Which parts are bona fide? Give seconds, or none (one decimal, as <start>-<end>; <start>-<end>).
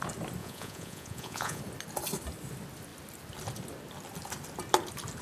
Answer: 0.0-0.4; 1.6-5.2